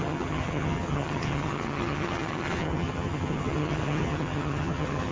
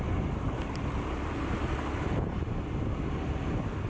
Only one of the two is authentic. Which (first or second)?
second